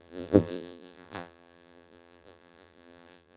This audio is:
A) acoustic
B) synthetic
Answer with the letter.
B